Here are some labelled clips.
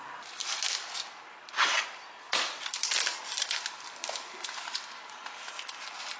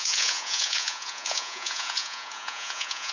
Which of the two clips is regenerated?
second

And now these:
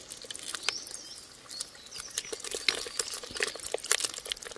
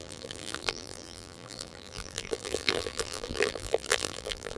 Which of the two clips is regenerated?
second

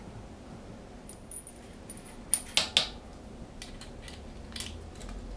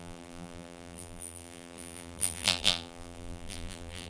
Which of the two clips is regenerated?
second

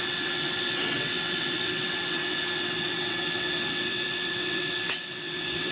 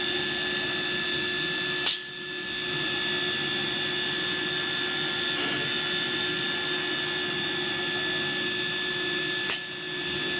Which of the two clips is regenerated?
first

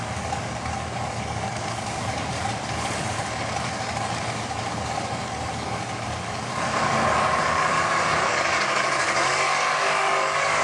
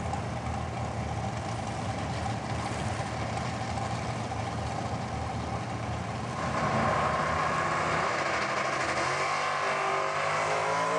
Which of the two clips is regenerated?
first